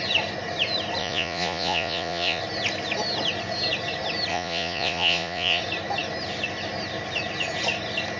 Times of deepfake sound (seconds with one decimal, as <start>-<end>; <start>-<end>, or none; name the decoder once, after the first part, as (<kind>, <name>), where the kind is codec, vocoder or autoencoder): 1.0-2.4 (vocoder, Vocos); 4.3-5.6